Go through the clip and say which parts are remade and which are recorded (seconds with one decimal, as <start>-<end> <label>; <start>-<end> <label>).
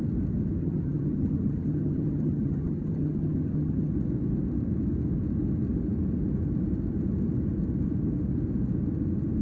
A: 0.0-0.6 recorded; 0.6-3.9 remade; 3.9-9.4 recorded